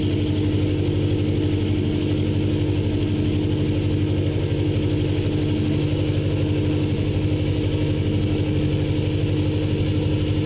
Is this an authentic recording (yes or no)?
yes